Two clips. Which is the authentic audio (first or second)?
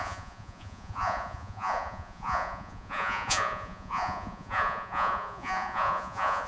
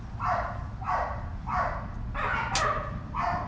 second